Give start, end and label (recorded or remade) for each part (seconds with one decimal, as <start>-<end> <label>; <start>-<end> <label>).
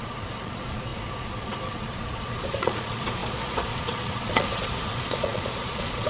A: 0.0-6.1 remade